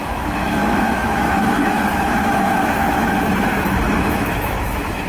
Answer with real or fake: fake